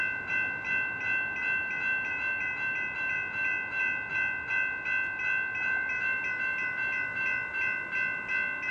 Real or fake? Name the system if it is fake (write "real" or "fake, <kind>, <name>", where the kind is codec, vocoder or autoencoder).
real